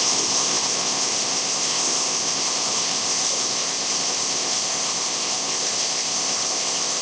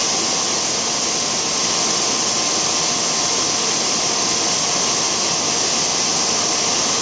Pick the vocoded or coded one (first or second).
first